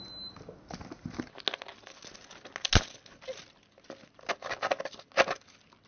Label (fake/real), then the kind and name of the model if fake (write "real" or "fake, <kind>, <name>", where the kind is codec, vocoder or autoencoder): real